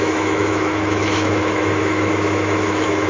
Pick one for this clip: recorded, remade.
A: remade